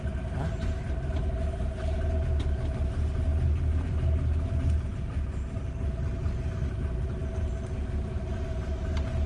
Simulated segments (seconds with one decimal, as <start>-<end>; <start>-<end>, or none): none